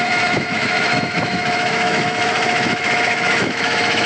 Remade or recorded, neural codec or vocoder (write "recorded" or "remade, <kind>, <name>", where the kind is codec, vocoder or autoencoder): remade, autoencoder, DAC-VAE